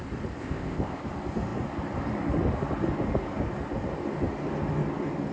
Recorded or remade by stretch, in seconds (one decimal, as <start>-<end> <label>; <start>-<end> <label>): 0.0-0.4 recorded; 0.4-1.0 remade; 1.0-5.3 recorded